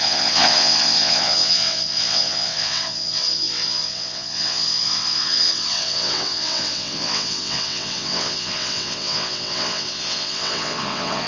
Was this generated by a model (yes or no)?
yes